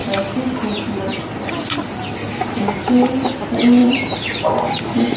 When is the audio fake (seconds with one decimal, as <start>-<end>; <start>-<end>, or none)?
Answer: 3.8-4.8